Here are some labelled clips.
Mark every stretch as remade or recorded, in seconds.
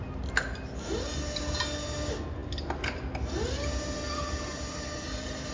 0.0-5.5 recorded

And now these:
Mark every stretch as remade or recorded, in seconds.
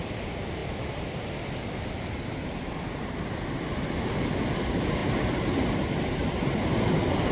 0.0-7.3 recorded